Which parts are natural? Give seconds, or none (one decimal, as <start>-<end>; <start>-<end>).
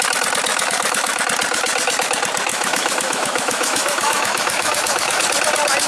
0.0-0.5; 1.2-2.5; 5.2-5.9